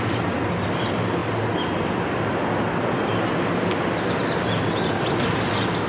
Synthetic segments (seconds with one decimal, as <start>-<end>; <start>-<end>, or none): none